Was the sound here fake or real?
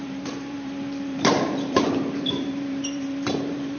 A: fake